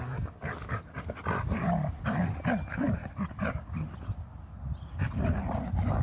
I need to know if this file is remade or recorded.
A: recorded